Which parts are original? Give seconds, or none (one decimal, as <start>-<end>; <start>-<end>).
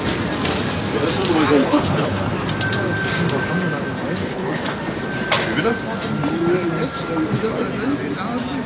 0.0-1.6; 2.3-4.2; 4.8-8.7